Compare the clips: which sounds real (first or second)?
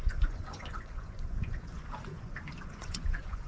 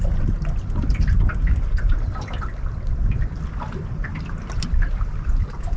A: second